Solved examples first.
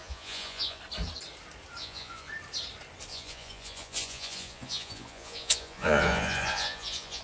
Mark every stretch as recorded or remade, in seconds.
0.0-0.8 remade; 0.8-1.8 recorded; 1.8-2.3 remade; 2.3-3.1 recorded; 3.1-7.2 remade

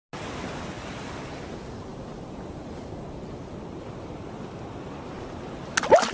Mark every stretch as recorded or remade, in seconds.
0.0-6.1 recorded

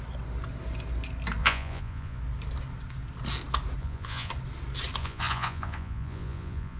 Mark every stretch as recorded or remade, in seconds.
0.0-1.4 recorded; 1.4-2.2 remade; 2.2-3.8 recorded; 3.8-4.3 remade; 4.3-5.0 recorded; 5.0-6.8 remade